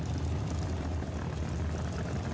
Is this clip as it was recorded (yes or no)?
yes